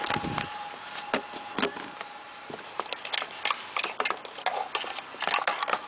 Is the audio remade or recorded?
recorded